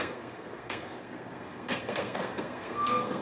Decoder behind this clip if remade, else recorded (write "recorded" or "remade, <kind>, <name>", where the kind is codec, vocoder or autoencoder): remade, codec, SNAC